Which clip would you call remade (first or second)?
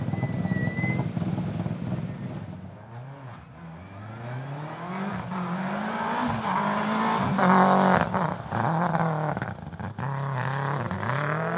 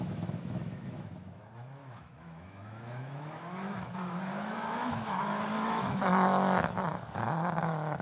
second